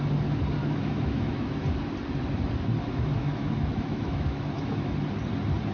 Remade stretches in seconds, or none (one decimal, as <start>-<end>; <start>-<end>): 0.6-1.5; 2.8-4.9